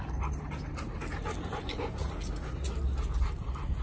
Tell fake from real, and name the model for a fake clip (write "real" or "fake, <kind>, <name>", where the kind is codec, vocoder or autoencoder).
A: real